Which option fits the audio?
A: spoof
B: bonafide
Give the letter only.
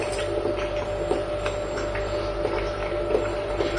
B